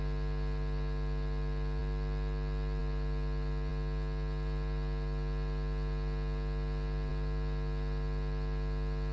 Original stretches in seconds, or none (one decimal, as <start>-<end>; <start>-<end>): 0.0-9.1